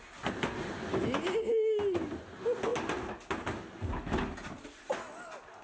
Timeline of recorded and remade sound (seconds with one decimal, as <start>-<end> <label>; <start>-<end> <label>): 0.0-5.6 recorded